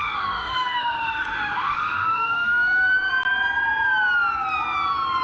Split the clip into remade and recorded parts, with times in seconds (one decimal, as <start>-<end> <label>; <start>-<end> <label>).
0.0-3.1 remade; 3.1-5.2 recorded